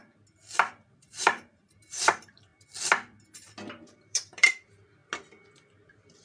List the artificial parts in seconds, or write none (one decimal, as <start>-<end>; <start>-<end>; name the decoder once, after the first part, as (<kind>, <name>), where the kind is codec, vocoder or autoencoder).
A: 0.7-2.5 (vocoder, BigVGAN v2); 3.7-5.0